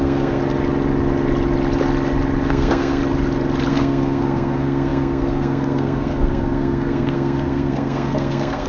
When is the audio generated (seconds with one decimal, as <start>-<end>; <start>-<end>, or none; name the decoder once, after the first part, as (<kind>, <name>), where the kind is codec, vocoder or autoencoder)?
0.0-0.4 (codec, SNAC); 2.5-3.0; 3.7-8.7